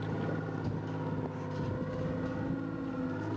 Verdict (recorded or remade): recorded